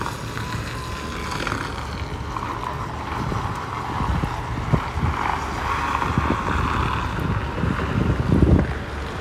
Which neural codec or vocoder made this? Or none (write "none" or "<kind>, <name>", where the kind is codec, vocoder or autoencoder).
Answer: none